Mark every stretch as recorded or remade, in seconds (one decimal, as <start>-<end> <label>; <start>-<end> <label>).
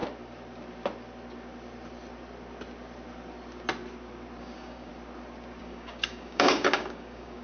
0.0-4.4 recorded; 4.4-4.9 remade; 4.9-5.6 recorded; 5.6-7.4 remade